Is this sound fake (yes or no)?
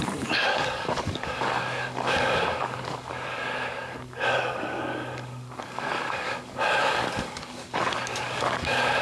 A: yes